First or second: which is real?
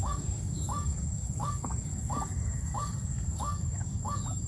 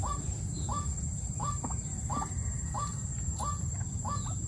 second